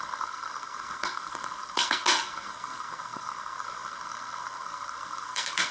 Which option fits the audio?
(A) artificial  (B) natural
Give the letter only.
A